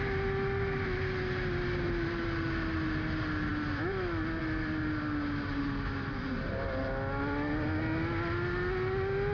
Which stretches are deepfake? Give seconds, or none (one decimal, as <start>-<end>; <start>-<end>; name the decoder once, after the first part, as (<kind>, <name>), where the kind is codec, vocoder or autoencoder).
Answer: none